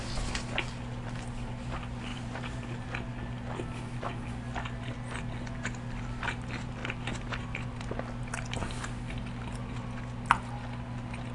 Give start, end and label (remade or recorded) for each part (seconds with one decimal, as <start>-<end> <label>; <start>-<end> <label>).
0.0-2.1 recorded; 2.1-2.9 remade; 2.9-11.3 recorded